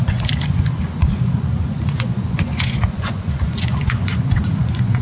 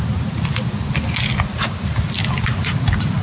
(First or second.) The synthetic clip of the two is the first